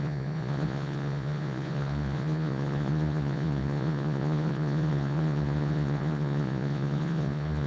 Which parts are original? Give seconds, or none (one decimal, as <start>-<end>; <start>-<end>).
none